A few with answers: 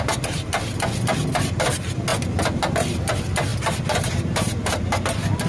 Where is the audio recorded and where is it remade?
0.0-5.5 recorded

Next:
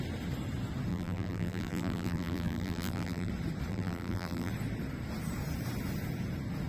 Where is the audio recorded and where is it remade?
0.0-0.9 recorded; 0.9-3.3 remade; 3.3-3.7 recorded; 3.7-4.5 remade; 4.5-6.7 recorded

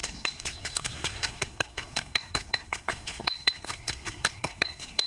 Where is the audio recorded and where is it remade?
0.0-5.1 remade

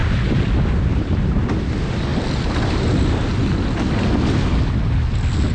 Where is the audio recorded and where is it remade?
0.0-5.5 recorded

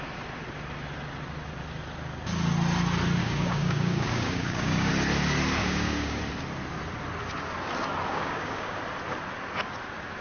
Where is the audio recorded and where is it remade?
0.0-3.2 recorded; 3.2-4.9 remade; 4.9-5.6 recorded; 5.6-6.2 remade; 6.2-8.1 recorded; 8.1-8.8 remade; 8.8-10.2 recorded

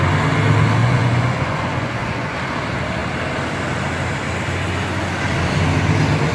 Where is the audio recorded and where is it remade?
0.0-0.8 recorded; 0.8-2.6 remade; 2.6-6.3 recorded

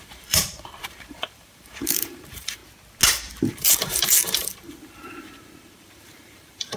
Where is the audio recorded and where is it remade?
0.0-2.6 remade; 2.6-3.5 recorded; 3.5-6.8 remade